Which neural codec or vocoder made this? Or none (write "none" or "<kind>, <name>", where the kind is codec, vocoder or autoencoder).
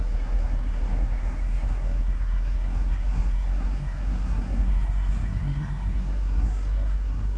codec, SNAC